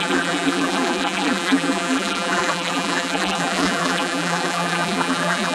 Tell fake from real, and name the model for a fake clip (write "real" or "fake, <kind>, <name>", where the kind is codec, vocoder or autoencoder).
fake, vocoder, BigVGAN v2